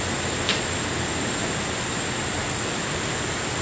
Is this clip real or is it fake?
real